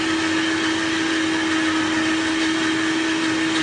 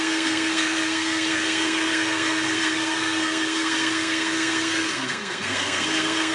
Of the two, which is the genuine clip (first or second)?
first